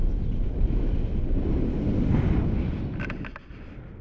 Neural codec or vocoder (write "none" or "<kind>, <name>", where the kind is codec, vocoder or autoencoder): none